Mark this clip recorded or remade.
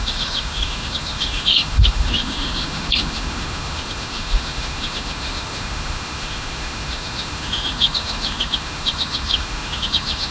remade